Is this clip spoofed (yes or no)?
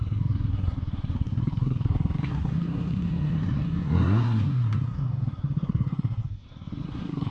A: yes